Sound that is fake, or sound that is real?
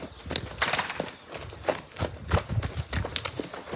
real